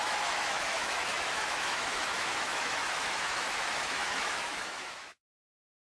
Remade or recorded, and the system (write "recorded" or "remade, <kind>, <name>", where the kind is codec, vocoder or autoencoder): remade, autoencoder, DAC-VAE